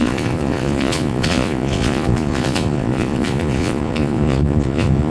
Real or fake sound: fake